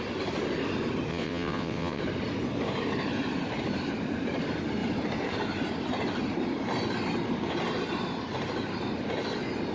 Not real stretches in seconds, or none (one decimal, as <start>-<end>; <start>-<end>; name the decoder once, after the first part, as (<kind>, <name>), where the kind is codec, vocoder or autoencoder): 1.1-2.0 (vocoder, WaveNeXt)